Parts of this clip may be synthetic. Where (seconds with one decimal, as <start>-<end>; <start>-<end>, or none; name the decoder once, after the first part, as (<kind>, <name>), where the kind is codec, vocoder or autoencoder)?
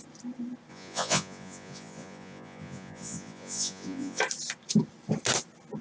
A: 0.7-4.2 (vocoder, Vocos)